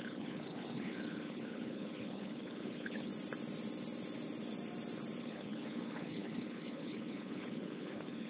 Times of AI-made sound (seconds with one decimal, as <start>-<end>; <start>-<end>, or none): 0.0-3.1; 5.2-8.3